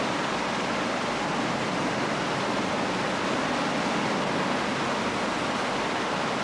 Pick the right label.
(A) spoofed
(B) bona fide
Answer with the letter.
B